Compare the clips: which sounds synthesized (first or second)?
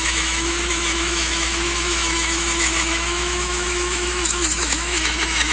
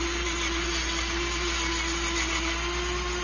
first